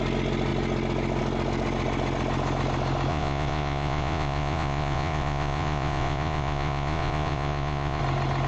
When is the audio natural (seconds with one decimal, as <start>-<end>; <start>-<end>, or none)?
0.0-3.1; 8.0-8.5

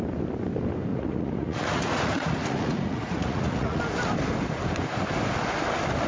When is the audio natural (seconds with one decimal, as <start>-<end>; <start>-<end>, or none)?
0.0-0.9; 3.8-6.1